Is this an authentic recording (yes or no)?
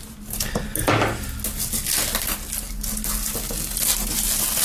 yes